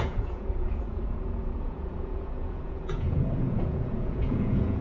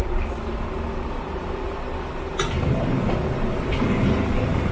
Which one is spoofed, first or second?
first